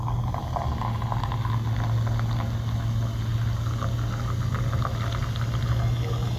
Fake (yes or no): no